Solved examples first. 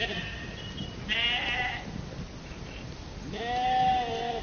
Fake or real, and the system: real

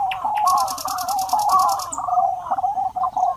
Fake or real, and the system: real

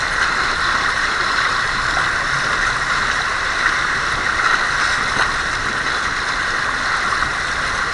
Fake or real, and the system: real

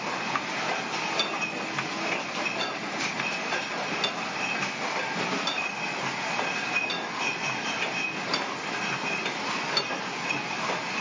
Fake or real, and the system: real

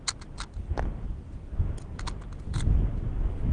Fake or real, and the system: real